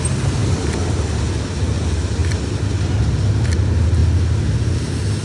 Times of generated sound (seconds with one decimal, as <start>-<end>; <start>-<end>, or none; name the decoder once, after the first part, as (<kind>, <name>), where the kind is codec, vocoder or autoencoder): 0.4-1.2 (vocoder, BigVGAN v2)